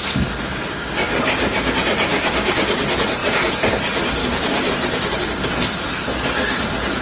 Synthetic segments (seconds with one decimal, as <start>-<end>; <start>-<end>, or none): 0.5-1.7; 2.1-2.8; 4.2-4.7